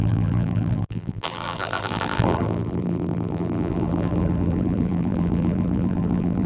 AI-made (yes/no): yes